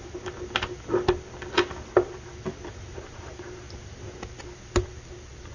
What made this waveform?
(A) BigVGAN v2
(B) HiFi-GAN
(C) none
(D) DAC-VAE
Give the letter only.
C